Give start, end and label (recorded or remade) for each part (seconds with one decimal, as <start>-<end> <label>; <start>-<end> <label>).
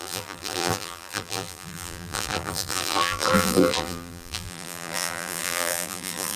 0.0-6.4 remade